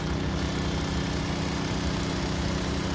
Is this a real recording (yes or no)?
yes